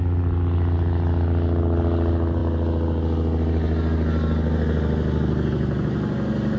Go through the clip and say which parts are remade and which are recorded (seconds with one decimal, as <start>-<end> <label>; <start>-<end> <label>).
0.0-6.6 recorded